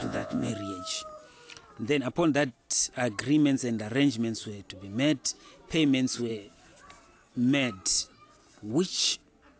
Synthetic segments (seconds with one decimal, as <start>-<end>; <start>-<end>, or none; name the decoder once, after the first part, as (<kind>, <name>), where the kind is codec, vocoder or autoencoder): 0.0-0.5 (vocoder, Vocos)